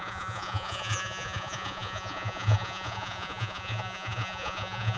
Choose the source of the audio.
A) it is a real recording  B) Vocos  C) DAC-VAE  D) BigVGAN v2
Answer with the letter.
B